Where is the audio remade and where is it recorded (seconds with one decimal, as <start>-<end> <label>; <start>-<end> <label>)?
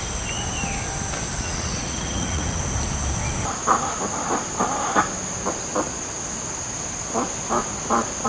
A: 0.0-1.3 recorded; 1.3-2.6 remade; 2.6-8.3 recorded